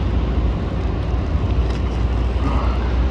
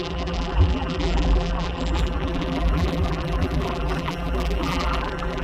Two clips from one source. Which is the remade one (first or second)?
second